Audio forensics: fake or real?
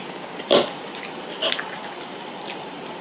real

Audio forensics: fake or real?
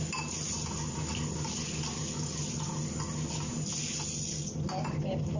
real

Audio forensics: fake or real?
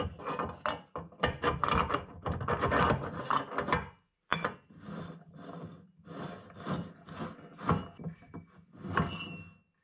real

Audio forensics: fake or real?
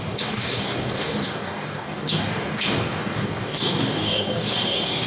fake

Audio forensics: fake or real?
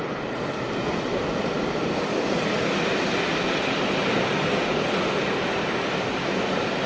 real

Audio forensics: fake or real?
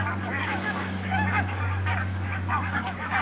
fake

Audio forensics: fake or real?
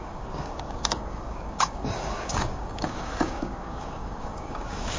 fake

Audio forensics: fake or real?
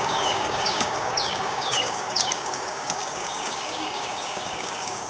fake